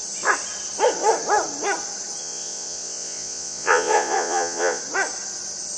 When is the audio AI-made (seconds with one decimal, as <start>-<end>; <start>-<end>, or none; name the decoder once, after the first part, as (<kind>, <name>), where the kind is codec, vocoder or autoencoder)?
2.2-4.8 (vocoder, Vocos)